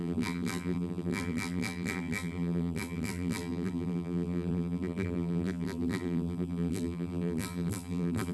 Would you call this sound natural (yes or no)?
no